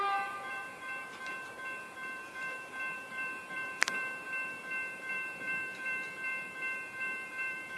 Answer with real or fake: fake